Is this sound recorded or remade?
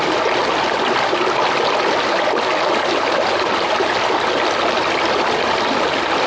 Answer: recorded